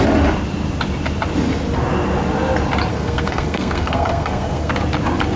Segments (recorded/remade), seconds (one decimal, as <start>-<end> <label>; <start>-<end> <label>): 0.0-2.9 recorded; 2.9-4.7 remade; 4.7-5.4 recorded